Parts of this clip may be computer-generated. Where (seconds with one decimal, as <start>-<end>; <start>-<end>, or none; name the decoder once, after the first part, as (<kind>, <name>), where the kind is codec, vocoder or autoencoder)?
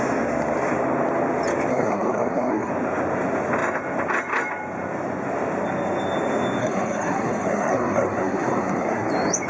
1.7-2.7 (codec, SNAC); 6.6-9.1